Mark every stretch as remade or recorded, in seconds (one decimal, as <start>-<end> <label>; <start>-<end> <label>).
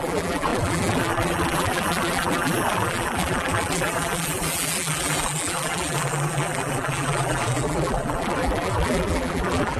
0.0-9.8 remade